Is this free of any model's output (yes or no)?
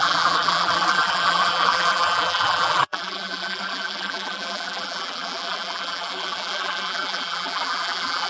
no